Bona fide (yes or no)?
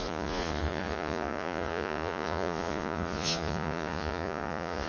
no